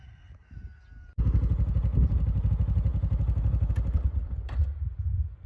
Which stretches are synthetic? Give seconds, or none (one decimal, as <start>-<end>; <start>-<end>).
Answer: none